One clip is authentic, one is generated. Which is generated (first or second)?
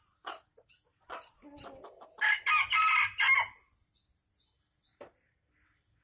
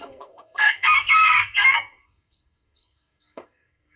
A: second